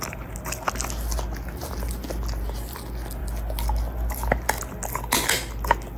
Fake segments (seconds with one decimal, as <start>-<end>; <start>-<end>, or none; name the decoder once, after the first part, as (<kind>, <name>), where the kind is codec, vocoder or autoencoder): none